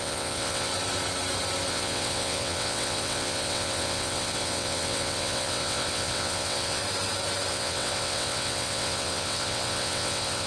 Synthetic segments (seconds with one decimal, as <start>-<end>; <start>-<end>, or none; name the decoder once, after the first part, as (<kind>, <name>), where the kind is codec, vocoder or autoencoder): 0.0-0.7 (vocoder, WaveNeXt); 1.7-6.8; 7.5-10.5